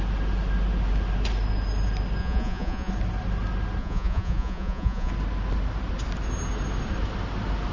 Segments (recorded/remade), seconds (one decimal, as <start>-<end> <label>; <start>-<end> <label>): 0.0-2.2 recorded; 2.2-2.9 remade; 2.9-3.8 recorded; 3.8-5.1 remade; 5.1-7.7 recorded